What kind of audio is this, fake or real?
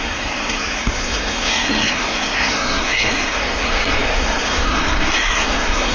fake